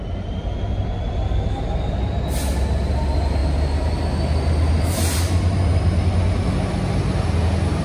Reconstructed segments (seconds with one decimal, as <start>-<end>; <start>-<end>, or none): none